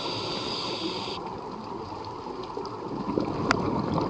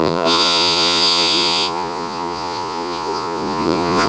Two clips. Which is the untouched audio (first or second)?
first